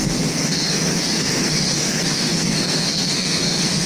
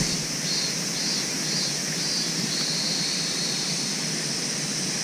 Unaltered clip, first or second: second